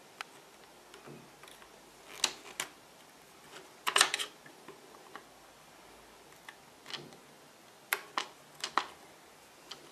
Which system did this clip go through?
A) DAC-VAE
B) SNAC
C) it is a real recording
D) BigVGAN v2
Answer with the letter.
C